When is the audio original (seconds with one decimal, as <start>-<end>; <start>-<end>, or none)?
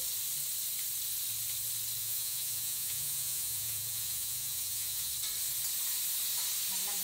0.0-2.0; 5.1-7.0